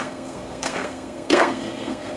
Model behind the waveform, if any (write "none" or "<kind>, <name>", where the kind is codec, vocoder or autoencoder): codec, SNAC